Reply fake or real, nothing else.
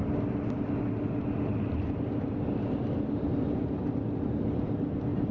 real